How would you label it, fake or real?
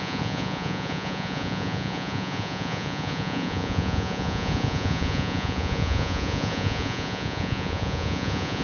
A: fake